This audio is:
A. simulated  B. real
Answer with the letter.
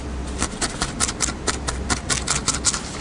B